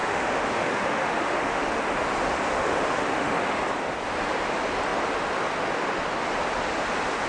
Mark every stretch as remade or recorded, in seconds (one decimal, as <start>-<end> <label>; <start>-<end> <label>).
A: 0.0-1.8 remade; 1.8-2.5 recorded; 2.5-3.6 remade; 3.6-7.3 recorded